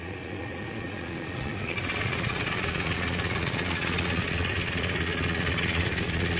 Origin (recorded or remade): remade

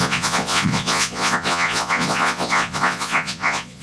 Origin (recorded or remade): remade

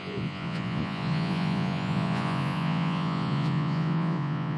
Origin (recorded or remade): remade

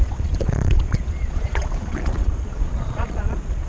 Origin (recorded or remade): remade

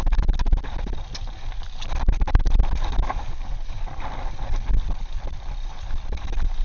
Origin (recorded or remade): recorded